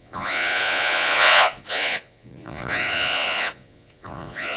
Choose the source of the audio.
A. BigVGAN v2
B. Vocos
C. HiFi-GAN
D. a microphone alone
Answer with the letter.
B